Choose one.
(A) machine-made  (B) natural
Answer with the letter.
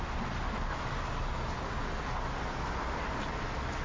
B